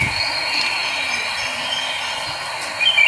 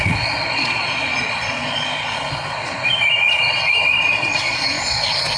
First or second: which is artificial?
second